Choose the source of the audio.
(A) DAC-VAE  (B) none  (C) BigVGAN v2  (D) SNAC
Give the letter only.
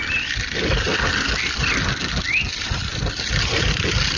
B